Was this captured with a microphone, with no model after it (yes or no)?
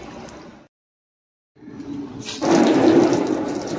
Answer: yes